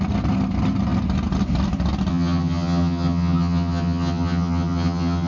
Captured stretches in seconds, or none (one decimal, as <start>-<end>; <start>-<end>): 0.0-2.1